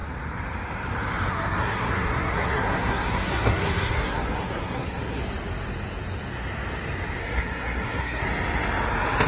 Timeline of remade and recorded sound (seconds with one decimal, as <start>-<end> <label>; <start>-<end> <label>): 0.0-1.3 recorded; 1.3-5.2 remade; 5.2-7.2 recorded; 7.2-8.2 remade; 8.2-9.3 recorded